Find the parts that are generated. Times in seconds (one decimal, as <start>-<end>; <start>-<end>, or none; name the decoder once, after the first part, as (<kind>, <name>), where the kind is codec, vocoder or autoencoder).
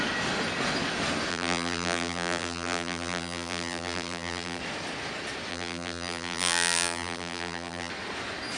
1.3-4.6 (vocoder, BigVGAN v2); 5.5-7.9